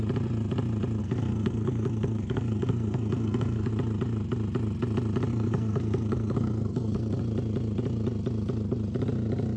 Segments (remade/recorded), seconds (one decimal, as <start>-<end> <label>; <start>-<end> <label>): 0.0-1.0 recorded; 1.0-3.7 remade; 3.7-5.3 recorded; 5.3-7.2 remade; 7.2-9.6 recorded